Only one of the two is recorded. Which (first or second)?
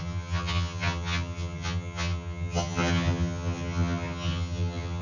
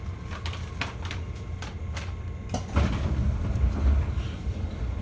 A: second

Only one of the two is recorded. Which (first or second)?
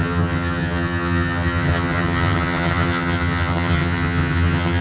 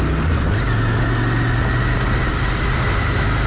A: second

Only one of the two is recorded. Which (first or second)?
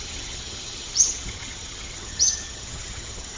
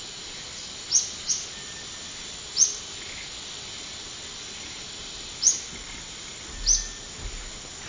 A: second